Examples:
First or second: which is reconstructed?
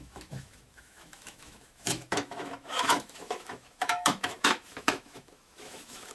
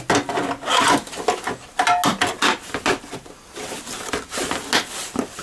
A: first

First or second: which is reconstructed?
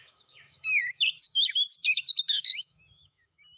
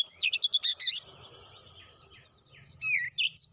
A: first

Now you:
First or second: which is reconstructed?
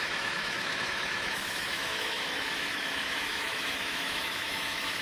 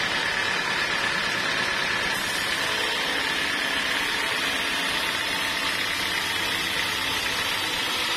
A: first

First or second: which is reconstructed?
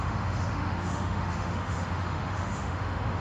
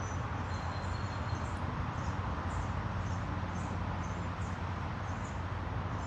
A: first